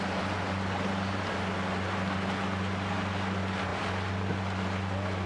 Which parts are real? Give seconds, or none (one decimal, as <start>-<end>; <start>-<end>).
0.0-5.3